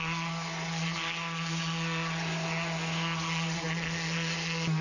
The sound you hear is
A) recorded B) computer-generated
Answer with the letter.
A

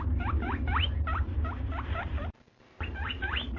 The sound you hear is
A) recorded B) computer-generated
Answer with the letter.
B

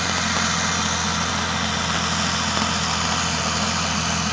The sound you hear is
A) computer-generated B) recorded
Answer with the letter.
B